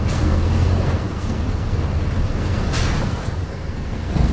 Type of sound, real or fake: fake